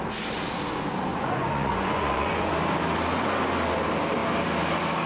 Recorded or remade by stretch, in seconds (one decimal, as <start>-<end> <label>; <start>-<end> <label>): 0.0-1.1 recorded; 1.1-2.5 remade; 2.5-5.1 recorded